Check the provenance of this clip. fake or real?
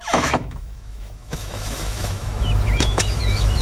fake